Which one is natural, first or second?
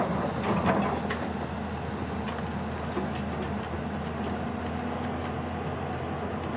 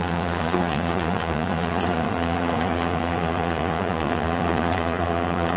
first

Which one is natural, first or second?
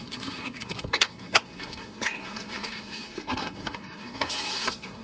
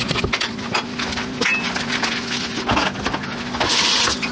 second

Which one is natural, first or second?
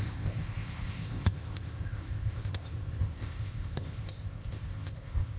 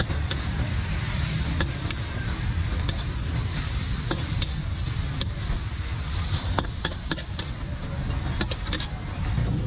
second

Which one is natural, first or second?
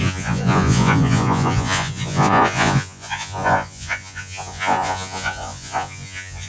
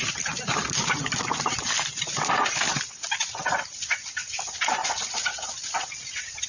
second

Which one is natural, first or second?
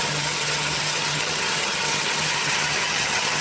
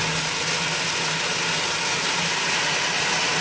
second